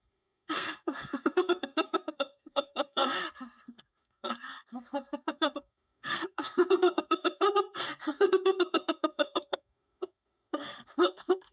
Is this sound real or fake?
fake